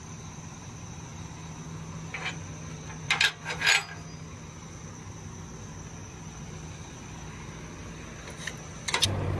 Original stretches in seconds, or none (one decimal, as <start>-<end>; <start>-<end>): 0.0-9.4